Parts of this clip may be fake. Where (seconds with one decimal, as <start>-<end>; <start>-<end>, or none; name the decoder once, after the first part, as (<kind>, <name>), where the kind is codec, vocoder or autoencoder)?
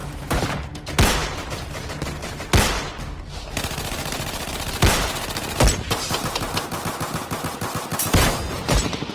0.0-0.6 (vocoder, BigVGAN v2)